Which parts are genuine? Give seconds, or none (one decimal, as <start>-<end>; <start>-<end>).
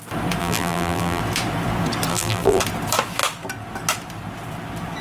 0.0-0.4; 1.2-2.1; 2.6-5.0